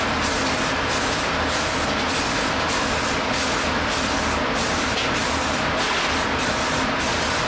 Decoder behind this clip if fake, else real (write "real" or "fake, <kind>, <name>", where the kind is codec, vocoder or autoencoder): real